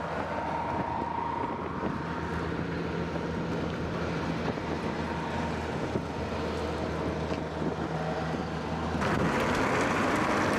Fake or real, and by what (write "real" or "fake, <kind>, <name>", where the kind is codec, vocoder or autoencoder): real